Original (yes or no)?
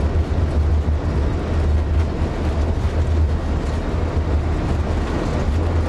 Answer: yes